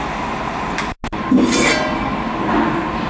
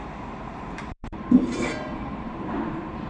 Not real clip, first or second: second